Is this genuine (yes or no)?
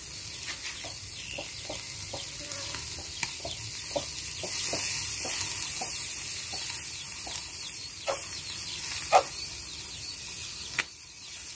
yes